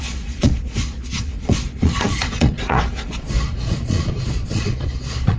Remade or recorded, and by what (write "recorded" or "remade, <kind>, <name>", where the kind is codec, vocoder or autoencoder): remade, vocoder, Vocos